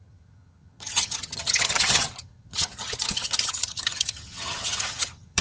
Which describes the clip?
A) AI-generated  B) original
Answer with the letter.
A